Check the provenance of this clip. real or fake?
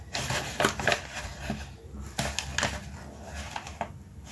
real